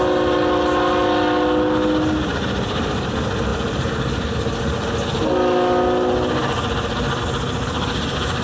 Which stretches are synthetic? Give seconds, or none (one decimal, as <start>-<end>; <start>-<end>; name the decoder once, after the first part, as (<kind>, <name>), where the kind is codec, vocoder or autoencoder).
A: none